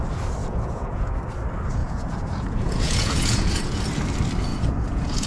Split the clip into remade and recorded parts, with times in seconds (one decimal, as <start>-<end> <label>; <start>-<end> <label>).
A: 0.0-0.4 recorded; 0.4-1.1 remade; 1.1-1.8 recorded; 1.8-3.8 remade; 3.8-4.5 recorded; 4.5-5.3 remade